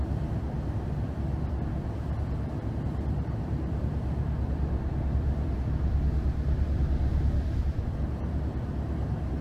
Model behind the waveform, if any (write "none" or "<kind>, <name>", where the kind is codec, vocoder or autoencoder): none